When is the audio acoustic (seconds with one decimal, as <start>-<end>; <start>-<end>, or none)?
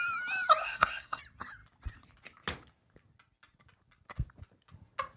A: 0.0-0.6; 1.2-5.2